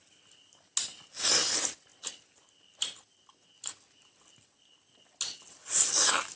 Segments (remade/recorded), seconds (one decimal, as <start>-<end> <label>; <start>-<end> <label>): 0.0-6.4 recorded

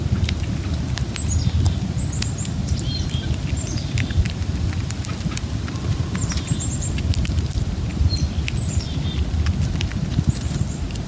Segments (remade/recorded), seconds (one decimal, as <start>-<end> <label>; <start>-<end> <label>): 0.0-7.9 remade; 7.9-8.6 recorded; 8.6-11.1 remade

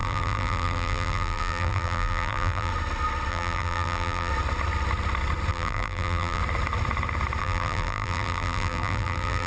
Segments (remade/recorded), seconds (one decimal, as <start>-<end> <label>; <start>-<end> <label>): 0.0-2.7 remade; 2.7-3.3 recorded; 3.3-4.3 remade; 4.3-5.5 recorded; 5.5-6.4 remade; 6.4-7.4 recorded; 7.4-9.5 remade